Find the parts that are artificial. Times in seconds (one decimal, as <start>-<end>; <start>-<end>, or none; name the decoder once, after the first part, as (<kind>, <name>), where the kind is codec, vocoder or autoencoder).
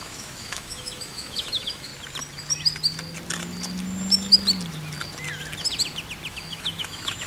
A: 0.0-1.9 (autoencoder, DAC-VAE); 6.3-7.3